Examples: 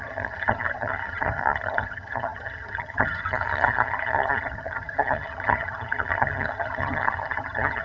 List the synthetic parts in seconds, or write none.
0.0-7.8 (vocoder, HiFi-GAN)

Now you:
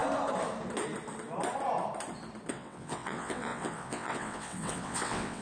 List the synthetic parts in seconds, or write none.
2.5-5.4 (vocoder, WaveNeXt)